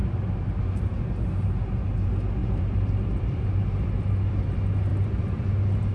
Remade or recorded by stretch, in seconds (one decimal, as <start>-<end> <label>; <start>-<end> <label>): 0.0-1.0 remade; 1.0-2.4 recorded; 2.4-4.4 remade; 4.4-4.9 recorded; 4.9-5.5 remade; 5.5-5.9 recorded